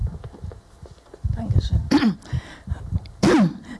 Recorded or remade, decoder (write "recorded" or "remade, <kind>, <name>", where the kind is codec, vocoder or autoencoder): recorded